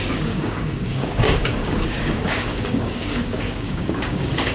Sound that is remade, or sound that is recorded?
remade